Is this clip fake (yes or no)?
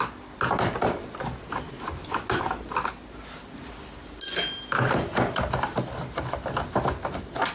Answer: no